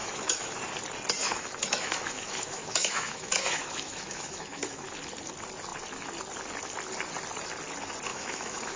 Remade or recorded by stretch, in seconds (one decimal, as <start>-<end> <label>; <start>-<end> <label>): 0.0-0.6 remade; 0.6-1.2 recorded; 1.2-4.9 remade; 4.9-8.1 recorded; 8.1-8.8 remade